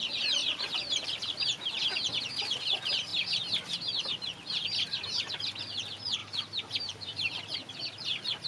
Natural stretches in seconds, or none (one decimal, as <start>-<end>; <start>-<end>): 0.0-0.4; 1.7-6.2; 7.4-8.5